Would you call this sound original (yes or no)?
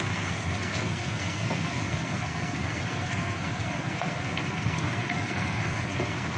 no